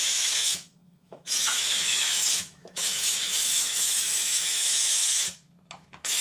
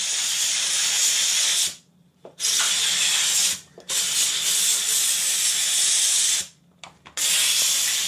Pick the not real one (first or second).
first